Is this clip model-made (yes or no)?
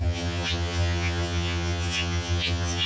yes